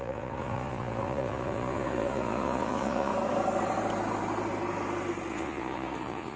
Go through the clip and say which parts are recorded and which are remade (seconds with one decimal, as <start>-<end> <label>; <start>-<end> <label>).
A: 0.0-3.1 remade; 3.1-5.3 recorded; 5.3-6.4 remade